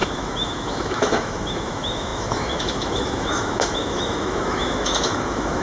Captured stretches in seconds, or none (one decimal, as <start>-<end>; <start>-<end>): none